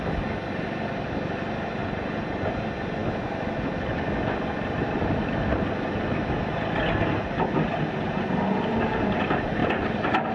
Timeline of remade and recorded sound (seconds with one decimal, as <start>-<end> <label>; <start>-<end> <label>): 0.0-1.8 recorded; 1.8-2.5 remade; 2.5-10.3 recorded